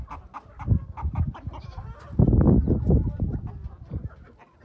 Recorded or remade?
recorded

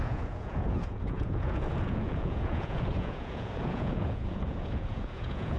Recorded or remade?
remade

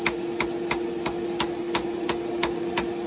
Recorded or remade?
recorded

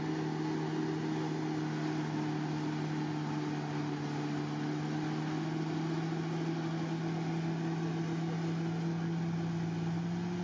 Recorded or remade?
recorded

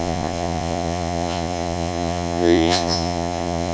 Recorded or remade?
remade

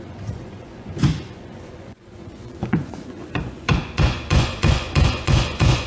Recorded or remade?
remade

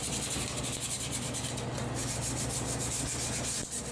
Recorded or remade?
recorded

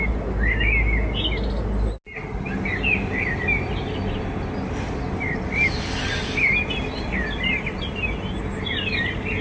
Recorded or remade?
recorded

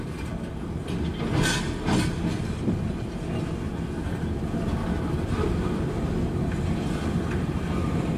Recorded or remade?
recorded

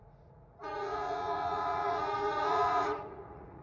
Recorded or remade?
remade